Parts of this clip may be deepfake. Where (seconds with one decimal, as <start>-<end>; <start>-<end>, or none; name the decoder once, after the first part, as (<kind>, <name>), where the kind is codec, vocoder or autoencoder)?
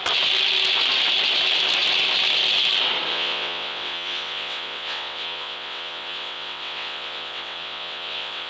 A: 3.1-8.5 (vocoder, WaveNeXt)